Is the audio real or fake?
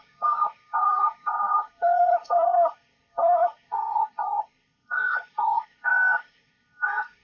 fake